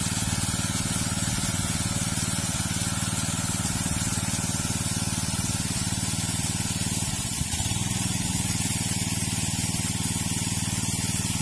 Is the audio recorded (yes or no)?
yes